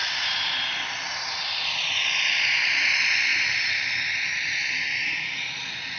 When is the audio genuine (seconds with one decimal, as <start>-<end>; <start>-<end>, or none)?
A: 0.0-6.0